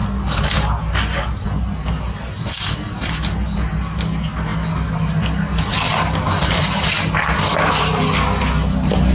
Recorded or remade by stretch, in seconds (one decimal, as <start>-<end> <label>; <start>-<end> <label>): 0.0-9.1 recorded